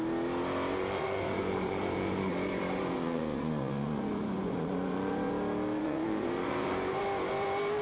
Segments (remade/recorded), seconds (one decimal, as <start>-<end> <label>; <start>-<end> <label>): 0.0-0.7 recorded; 0.7-5.3 remade; 5.3-5.8 recorded; 5.8-7.0 remade; 7.0-7.8 recorded